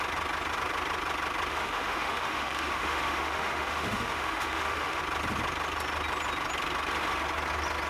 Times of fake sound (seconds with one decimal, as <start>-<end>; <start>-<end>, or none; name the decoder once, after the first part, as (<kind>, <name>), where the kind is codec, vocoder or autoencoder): 1.5-5.0 (autoencoder, DAC-VAE)